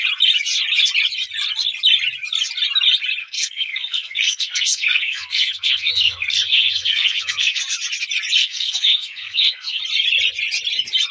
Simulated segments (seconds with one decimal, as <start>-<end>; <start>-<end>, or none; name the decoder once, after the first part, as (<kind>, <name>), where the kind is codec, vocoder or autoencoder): 3.2-7.6 (codec, SNAC); 8.4-9.8

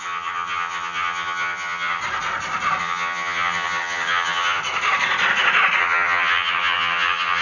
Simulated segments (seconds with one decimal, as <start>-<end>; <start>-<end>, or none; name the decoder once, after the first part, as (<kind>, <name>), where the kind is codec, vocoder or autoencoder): 0.0-2.0 (vocoder, HiFi-GAN); 2.8-4.6; 5.8-7.4

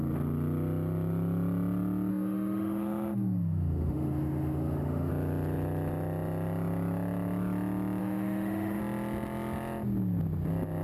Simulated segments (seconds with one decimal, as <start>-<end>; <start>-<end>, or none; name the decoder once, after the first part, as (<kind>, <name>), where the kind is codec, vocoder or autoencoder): 2.1-5.1 (autoencoder, DAC-VAE); 8.0-8.8

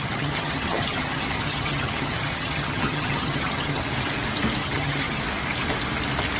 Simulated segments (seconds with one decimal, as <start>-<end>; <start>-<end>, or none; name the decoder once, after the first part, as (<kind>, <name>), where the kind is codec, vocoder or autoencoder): 0.0-3.8 (vocoder, HiFi-GAN); 4.6-5.2

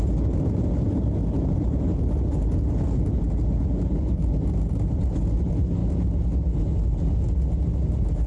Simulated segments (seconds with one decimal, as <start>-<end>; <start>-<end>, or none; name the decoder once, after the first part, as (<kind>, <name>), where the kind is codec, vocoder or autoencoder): none

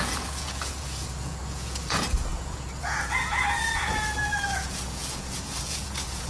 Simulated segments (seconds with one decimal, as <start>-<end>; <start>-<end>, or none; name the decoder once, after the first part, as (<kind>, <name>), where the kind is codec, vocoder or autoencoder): 0.0-6.3 (vocoder, Vocos)